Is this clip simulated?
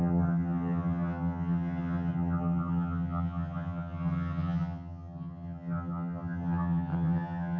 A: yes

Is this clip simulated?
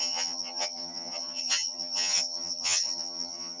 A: yes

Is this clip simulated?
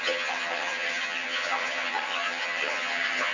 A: yes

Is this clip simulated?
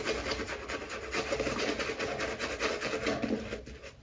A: no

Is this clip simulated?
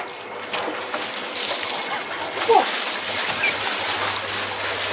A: no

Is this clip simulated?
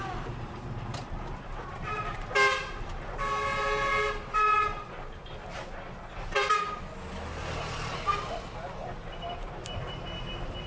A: no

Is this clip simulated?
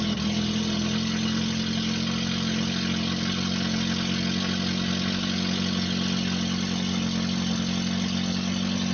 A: no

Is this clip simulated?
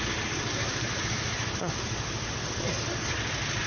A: no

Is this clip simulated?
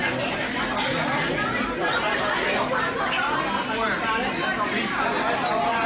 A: no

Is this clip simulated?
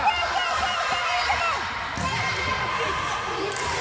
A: no